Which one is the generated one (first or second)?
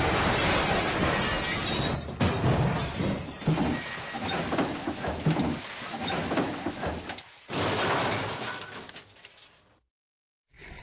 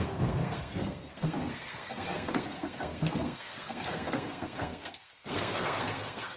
second